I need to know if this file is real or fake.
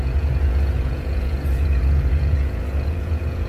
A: fake